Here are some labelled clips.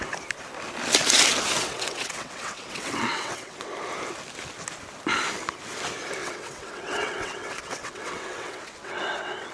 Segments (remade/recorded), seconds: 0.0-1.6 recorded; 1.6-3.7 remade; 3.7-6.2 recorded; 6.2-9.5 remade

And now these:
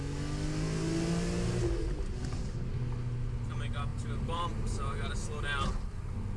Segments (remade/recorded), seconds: 0.0-3.9 recorded; 3.9-5.7 remade; 5.7-6.4 recorded

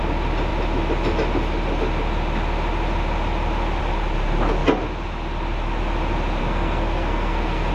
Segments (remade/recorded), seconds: 0.0-6.4 recorded; 6.4-7.7 remade

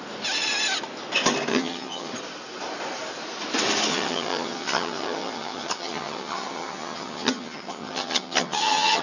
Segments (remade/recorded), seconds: 0.0-1.5 recorded; 1.5-2.1 remade; 2.1-3.9 recorded; 3.9-9.0 remade

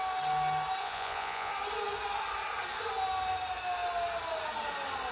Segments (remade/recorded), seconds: 0.0-0.8 recorded; 0.8-1.5 remade; 1.5-5.1 recorded